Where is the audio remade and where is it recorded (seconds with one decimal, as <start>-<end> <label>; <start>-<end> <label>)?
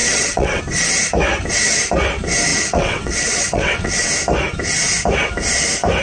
0.0-0.6 remade; 0.6-2.5 recorded; 2.5-4.1 remade; 4.1-6.0 recorded